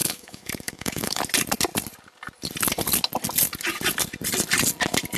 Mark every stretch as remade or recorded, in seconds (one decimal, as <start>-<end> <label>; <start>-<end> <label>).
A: 0.0-1.2 remade; 1.2-5.2 recorded